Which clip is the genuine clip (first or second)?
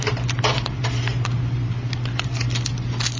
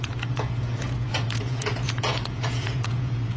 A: first